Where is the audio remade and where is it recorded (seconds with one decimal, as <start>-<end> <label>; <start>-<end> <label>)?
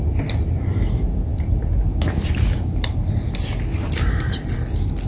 0.0-5.1 recorded